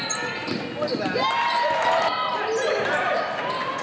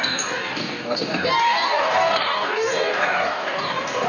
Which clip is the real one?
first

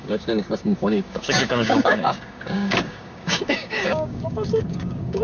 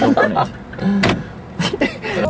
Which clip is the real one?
second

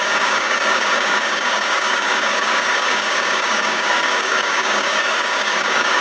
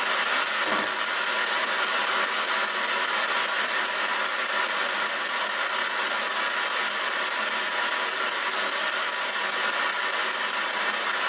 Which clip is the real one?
second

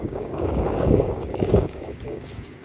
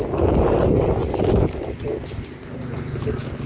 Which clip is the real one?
second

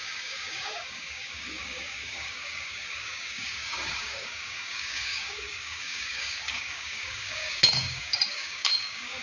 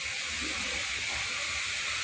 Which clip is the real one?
second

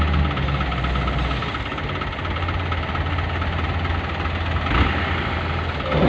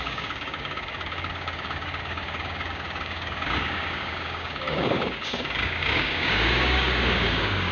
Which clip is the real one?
first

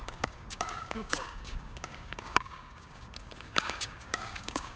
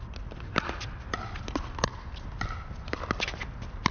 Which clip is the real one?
second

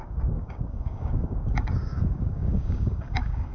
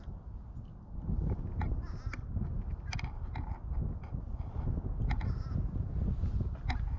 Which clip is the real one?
second